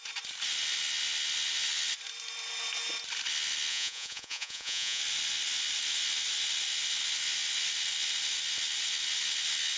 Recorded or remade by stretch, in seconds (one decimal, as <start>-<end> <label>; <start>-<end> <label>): 0.0-3.7 recorded; 3.7-5.0 remade; 5.0-9.8 recorded